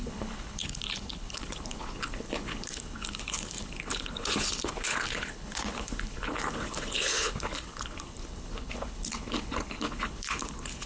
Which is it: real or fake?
fake